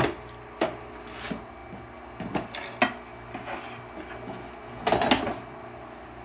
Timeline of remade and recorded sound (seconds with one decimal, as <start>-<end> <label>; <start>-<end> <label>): 0.0-6.2 recorded